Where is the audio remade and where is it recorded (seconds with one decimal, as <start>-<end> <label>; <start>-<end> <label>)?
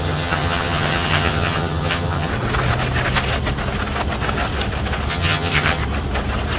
0.0-2.3 remade; 2.3-5.1 recorded; 5.1-5.8 remade; 5.8-6.6 recorded